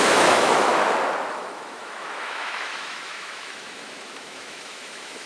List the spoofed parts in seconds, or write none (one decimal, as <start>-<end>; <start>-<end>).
0.0-0.7; 1.3-5.3